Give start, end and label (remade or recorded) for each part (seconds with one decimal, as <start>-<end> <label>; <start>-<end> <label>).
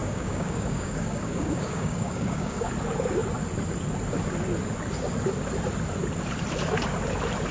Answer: 0.0-2.7 remade; 2.7-7.5 recorded